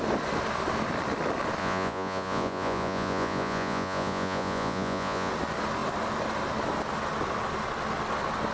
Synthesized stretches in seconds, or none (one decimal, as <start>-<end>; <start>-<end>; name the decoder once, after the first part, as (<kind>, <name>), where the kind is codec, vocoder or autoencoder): 1.6-5.3 (vocoder, Vocos)

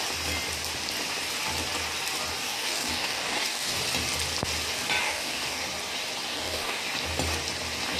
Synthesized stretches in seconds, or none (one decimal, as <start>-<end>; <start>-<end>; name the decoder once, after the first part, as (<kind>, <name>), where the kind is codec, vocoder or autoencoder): 2.4-3.8 (codec, DAC); 5.0-5.6; 6.3-6.8